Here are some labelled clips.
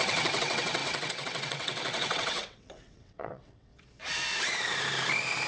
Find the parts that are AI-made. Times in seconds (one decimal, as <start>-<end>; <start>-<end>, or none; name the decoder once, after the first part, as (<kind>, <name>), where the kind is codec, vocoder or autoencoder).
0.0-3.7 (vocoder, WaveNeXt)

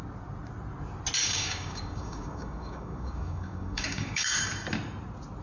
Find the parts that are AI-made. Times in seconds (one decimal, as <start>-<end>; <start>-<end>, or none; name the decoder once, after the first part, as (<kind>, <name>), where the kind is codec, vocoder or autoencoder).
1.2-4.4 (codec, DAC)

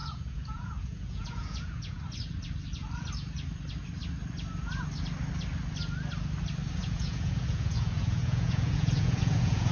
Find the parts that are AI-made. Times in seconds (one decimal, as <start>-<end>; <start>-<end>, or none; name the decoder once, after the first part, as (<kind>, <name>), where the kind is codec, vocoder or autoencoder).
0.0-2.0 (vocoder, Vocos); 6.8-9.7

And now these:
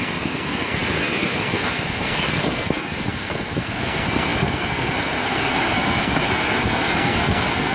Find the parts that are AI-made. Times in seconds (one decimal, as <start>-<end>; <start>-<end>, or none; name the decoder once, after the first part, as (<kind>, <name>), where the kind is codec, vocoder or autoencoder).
0.0-7.7 (codec, SNAC)